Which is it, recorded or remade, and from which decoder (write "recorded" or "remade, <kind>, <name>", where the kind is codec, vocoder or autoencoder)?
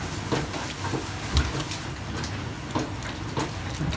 recorded